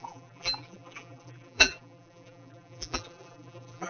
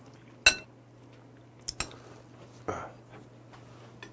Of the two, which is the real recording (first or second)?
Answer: second